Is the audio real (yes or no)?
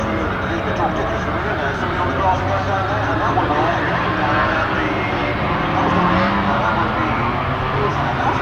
yes